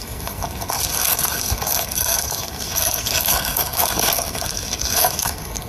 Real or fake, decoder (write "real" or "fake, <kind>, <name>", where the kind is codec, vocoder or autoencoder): fake, codec, SNAC